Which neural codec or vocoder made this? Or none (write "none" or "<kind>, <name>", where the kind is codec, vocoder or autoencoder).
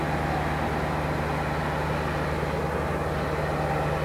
none